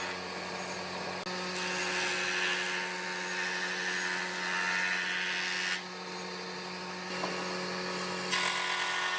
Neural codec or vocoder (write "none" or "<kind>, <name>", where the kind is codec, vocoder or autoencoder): none